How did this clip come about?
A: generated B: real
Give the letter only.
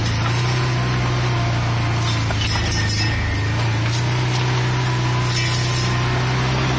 B